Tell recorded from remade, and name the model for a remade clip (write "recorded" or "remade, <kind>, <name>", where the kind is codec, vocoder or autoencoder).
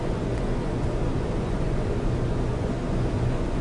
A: remade, vocoder, Vocos